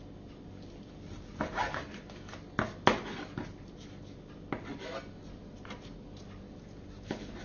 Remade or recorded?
recorded